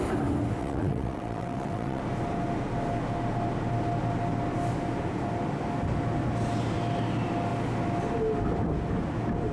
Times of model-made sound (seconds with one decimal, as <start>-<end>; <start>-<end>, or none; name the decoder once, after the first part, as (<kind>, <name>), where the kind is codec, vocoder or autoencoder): 0.6-2.0 (vocoder, WaveNeXt)